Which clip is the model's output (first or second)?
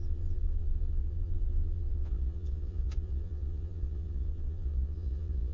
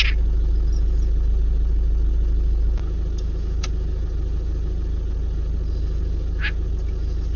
first